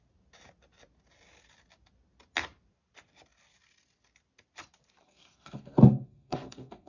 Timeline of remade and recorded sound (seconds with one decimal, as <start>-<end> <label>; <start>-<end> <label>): 0.0-5.0 recorded; 5.0-6.9 remade